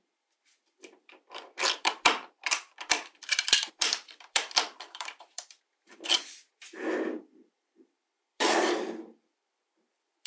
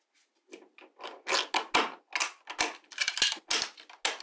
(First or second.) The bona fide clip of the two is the second